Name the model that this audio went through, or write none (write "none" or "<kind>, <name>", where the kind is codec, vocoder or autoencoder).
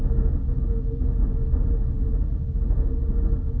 none